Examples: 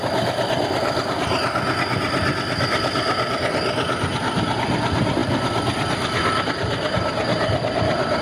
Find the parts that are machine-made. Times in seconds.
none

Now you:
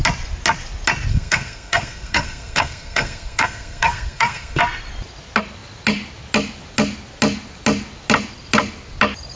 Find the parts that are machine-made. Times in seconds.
1.1-4.6 (codec, SNAC)

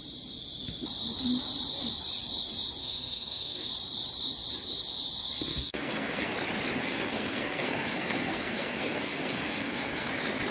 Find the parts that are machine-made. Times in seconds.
2.8-3.7 (codec, SNAC); 5.5-6.3; 6.8-10.1

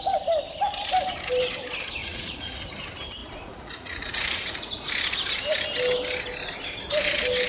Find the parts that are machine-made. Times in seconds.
2.0-2.6 (vocoder, Vocos); 3.2-4.9

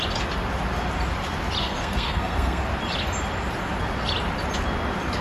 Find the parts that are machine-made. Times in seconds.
1.6-2.6 (codec, SNAC)